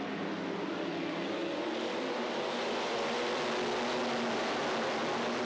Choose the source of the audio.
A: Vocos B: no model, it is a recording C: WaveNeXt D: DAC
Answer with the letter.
B